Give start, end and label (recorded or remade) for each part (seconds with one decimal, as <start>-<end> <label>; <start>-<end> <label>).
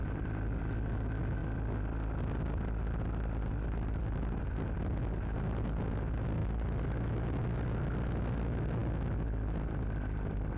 0.0-10.6 recorded